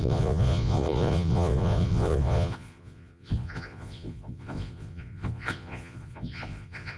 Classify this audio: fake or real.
fake